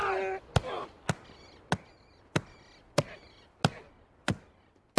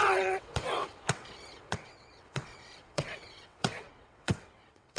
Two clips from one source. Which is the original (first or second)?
first